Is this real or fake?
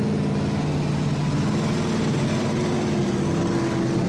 real